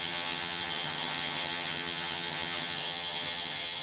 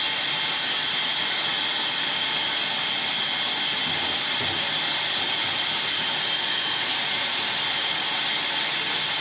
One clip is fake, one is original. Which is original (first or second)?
second